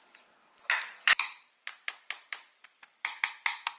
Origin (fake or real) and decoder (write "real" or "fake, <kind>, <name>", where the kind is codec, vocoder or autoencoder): real